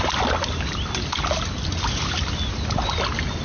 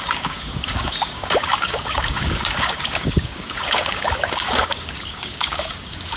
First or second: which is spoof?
second